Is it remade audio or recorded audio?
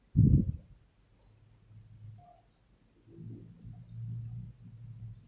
recorded